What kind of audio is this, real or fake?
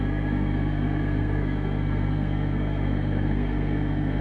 fake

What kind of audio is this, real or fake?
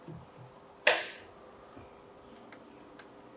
real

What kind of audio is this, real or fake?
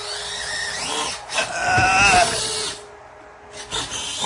real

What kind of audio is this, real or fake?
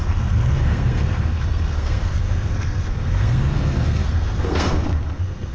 fake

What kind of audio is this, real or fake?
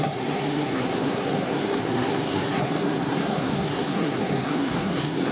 fake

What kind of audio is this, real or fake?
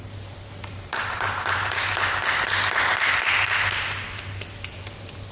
real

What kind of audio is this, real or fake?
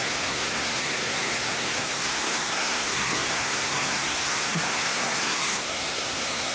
fake